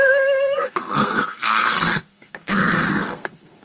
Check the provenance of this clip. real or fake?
fake